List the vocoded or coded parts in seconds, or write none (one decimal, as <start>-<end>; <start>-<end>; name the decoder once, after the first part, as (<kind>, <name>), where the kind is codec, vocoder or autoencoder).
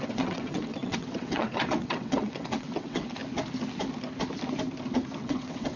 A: 0.0-3.2 (vocoder, WaveNeXt); 5.2-5.8